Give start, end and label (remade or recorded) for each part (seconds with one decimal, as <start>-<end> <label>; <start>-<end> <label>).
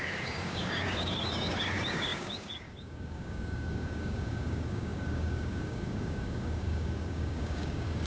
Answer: 0.0-8.1 remade